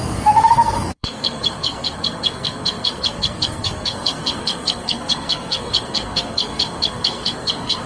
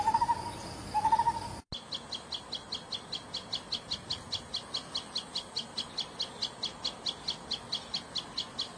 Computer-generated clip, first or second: first